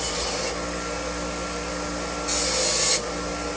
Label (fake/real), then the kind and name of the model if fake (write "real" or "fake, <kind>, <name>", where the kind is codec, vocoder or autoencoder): real